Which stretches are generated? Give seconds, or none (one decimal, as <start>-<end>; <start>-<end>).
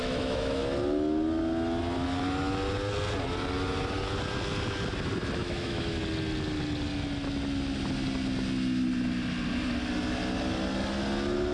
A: 0.0-0.6; 5.4-6.0